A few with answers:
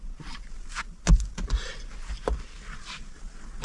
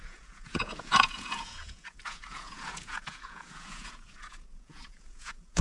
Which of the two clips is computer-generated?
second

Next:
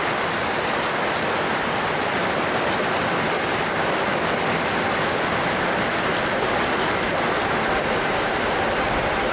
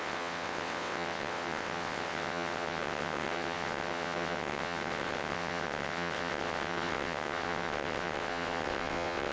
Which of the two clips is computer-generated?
second